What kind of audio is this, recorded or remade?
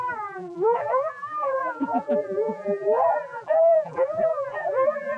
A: remade